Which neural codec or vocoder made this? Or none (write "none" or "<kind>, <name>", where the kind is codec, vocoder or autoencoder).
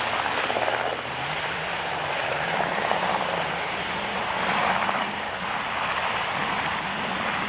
none